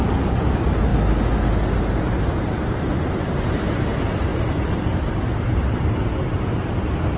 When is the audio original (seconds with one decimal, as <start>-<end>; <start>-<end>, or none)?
0.9-2.0

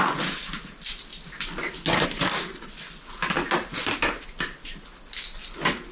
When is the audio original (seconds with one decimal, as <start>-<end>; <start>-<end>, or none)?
0.0-5.9

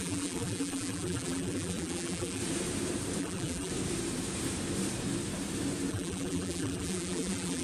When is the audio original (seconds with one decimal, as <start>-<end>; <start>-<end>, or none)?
2.4-3.2; 3.7-5.9

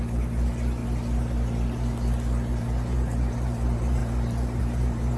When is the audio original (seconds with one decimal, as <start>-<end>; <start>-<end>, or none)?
0.8-2.5

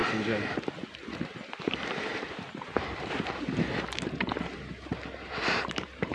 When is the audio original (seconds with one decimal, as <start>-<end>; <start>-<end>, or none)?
0.0-0.9

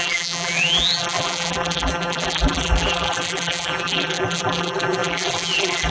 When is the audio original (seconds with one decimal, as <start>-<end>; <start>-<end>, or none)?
none